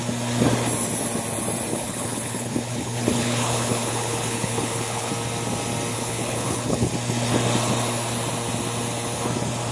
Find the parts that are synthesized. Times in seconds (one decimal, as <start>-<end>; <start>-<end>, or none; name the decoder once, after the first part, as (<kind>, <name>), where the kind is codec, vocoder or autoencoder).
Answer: 1.7-5.1 (codec, HILCodec); 5.9-6.9